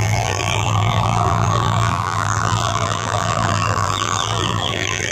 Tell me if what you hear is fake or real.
fake